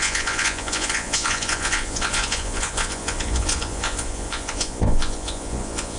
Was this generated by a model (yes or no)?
yes